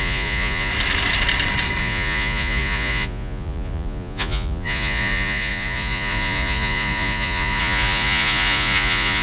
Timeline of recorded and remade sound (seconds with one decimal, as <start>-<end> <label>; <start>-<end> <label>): 0.0-0.7 remade; 0.7-1.8 recorded; 1.8-9.2 remade